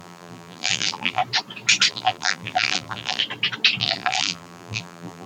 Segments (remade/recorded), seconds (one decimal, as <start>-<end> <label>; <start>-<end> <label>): 0.0-1.2 remade; 1.2-1.9 recorded; 1.9-3.2 remade; 3.2-3.8 recorded; 3.8-5.3 remade